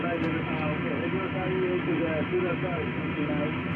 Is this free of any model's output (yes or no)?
yes